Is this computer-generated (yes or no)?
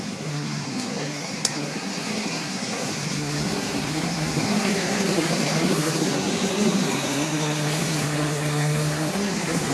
yes